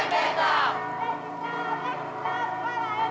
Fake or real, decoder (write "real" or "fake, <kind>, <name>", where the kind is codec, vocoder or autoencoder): real